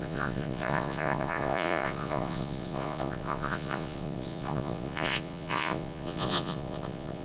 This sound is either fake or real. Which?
fake